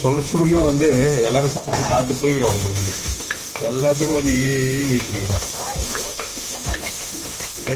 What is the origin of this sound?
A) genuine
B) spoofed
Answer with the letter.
B